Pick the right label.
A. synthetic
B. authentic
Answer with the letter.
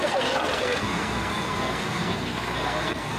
A